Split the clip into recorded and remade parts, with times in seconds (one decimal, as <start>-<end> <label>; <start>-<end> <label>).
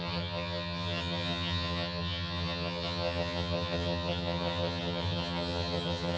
0.0-6.2 remade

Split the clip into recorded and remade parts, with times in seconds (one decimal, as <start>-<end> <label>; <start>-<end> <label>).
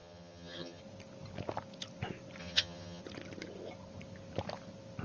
0.0-0.8 remade; 0.8-2.4 recorded; 2.4-3.0 remade; 3.0-5.0 recorded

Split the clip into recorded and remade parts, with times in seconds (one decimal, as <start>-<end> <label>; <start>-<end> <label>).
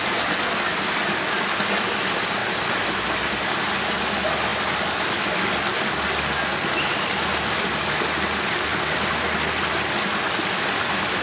0.0-11.2 recorded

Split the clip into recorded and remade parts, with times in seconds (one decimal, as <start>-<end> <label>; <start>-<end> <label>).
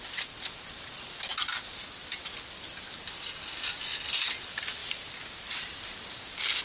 0.0-6.6 recorded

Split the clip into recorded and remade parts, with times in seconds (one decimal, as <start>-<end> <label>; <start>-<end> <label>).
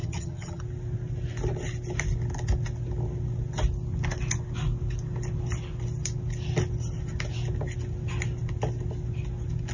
0.0-0.6 remade; 0.6-9.7 recorded